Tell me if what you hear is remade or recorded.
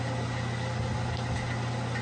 recorded